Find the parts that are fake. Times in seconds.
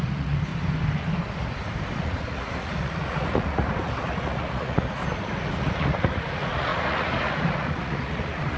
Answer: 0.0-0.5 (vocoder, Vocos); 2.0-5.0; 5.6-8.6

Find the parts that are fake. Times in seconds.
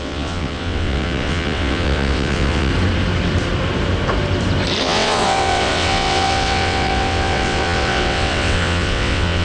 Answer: 0.0-2.7 (vocoder, WaveNeXt); 4.8-9.4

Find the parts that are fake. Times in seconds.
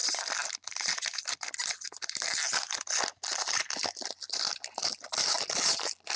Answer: none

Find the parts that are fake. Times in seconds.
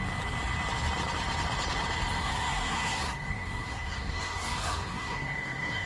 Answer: 2.2-5.9 (codec, SNAC)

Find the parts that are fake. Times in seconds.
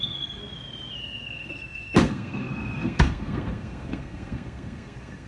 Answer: 0.0-0.4 (codec, SNAC); 1.0-5.3